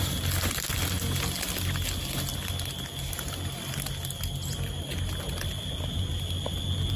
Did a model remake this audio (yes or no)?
no